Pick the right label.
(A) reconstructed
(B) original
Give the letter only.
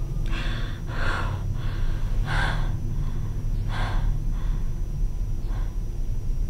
B